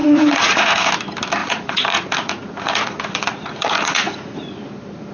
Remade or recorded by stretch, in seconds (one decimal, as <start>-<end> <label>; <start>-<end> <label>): 0.0-0.9 remade; 0.9-1.4 recorded; 1.4-4.5 remade; 4.5-5.1 recorded